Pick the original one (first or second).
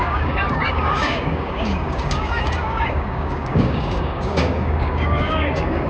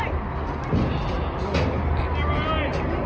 second